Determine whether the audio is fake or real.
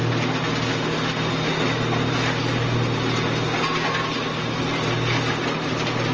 real